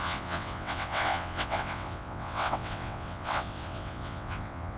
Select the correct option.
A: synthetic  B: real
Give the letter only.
A